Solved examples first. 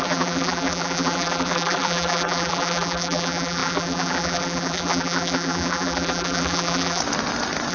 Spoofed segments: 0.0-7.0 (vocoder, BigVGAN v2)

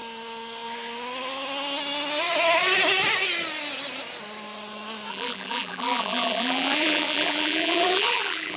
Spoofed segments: 5.1-8.6 (vocoder, BigVGAN v2)

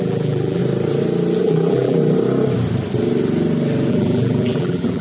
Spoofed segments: 0.0-0.6 (vocoder, BigVGAN v2); 1.4-2.0; 3.9-5.0

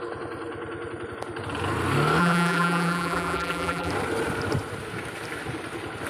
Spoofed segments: 2.2-3.9 (vocoder, BigVGAN v2)